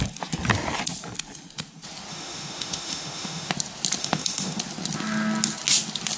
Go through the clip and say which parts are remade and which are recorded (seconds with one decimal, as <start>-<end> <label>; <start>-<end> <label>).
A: 0.0-2.1 recorded; 2.1-3.5 remade; 3.5-4.0 recorded; 4.0-4.6 remade; 4.6-6.2 recorded